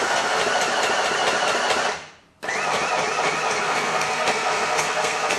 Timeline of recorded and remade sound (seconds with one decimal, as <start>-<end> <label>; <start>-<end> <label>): 0.0-0.4 remade; 0.4-3.6 recorded; 3.6-5.4 remade